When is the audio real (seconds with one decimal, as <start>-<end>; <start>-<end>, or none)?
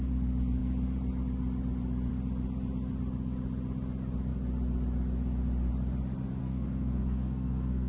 0.0-6.4